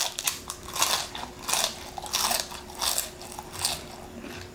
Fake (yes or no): no